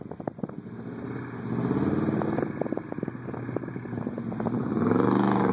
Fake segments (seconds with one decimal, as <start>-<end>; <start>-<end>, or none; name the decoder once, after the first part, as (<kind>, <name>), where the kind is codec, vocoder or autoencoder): 4.6-5.5 (codec, DAC)

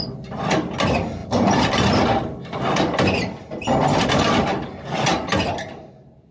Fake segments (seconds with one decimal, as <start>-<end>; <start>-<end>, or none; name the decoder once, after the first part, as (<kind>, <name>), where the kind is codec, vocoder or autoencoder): none

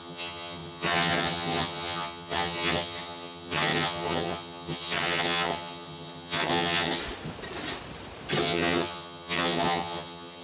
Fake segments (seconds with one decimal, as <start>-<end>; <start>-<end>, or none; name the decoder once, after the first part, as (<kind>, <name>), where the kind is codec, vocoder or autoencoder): 0.0-7.0 (vocoder, HiFi-GAN); 8.4-10.4